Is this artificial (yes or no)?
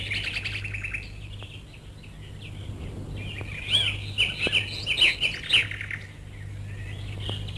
no